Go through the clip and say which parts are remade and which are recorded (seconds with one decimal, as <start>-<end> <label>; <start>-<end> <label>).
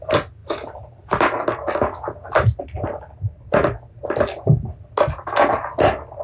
0.0-6.2 recorded